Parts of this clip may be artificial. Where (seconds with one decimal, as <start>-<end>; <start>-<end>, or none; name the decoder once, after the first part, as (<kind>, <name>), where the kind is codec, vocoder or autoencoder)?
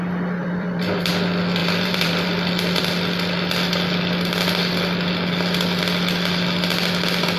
0.4-1.1 (vocoder, BigVGAN v2); 1.6-2.8